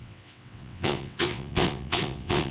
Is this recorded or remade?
remade